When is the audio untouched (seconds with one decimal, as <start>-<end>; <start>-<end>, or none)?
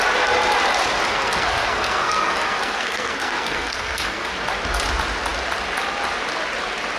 0.0-1.1; 4.3-7.0